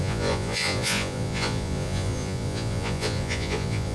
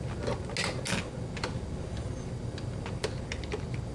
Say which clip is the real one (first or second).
second